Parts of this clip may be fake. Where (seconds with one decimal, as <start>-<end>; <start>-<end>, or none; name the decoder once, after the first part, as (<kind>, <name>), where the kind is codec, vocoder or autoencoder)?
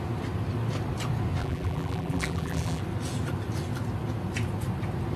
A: 1.4-2.8 (vocoder, BigVGAN v2)